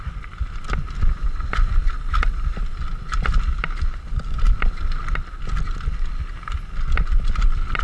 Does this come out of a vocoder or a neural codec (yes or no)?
no